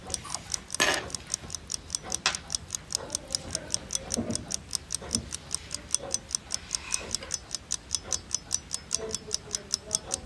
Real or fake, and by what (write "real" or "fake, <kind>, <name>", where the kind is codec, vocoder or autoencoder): real